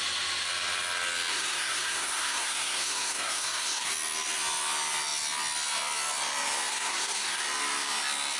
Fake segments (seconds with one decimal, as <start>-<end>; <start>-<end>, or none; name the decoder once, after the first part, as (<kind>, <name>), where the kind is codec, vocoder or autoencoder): 1.3-3.9 (codec, SNAC); 6.7-7.4